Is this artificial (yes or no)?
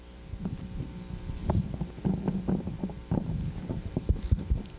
no